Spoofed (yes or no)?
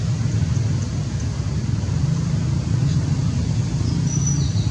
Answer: no